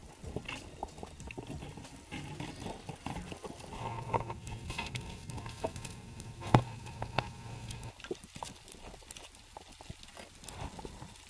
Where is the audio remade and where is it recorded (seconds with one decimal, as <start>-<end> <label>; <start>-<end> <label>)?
0.0-3.8 recorded; 3.8-7.9 remade; 7.9-11.3 recorded